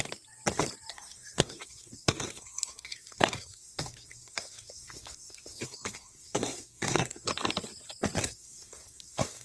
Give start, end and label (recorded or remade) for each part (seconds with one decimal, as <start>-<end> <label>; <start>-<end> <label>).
0.0-0.9 recorded; 0.9-7.3 remade; 7.3-8.2 recorded; 8.2-9.4 remade